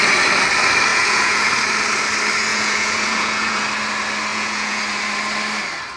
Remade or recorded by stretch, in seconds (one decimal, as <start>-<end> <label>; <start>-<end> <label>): 0.0-0.9 recorded; 0.9-1.5 remade; 1.5-2.5 recorded; 2.5-3.6 remade; 3.6-4.3 recorded; 4.3-4.8 remade; 4.8-6.0 recorded